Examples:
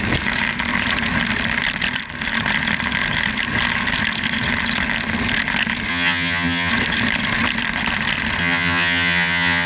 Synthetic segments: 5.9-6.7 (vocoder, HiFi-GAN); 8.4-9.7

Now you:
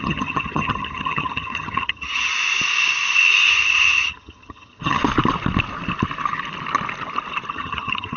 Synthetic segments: 0.0-2.3 (vocoder, HiFi-GAN); 3.5-5.0; 7.5-8.2

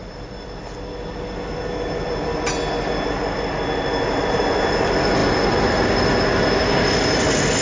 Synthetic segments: none

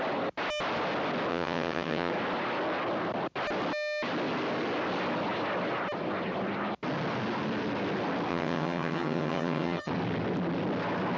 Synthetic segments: 1.3-2.1 (vocoder, HiFi-GAN); 8.3-9.9

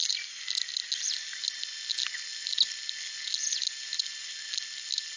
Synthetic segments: none

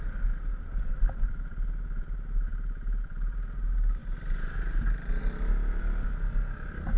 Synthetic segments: none

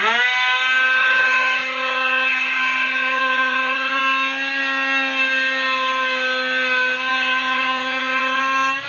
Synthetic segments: 1.0-4.0 (vocoder, HiFi-GAN); 7.1-8.4

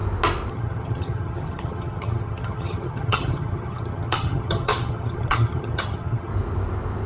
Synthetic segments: 0.5-6.3 (vocoder, HiFi-GAN)